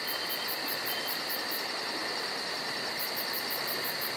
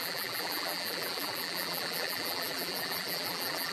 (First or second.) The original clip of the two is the first